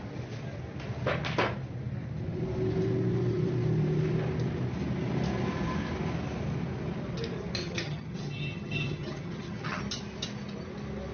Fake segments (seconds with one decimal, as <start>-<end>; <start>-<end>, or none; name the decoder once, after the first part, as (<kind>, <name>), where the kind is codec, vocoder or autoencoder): 7.6-9.8 (vocoder, HiFi-GAN)